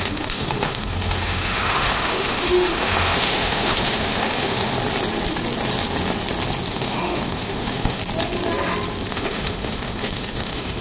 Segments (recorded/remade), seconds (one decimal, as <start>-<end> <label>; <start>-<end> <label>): 0.0-4.7 remade; 4.7-6.7 recorded; 6.7-8.0 remade; 8.0-9.1 recorded; 9.1-10.8 remade